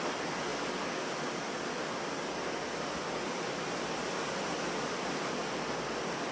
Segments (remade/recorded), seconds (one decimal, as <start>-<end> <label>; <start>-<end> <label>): 0.0-6.3 recorded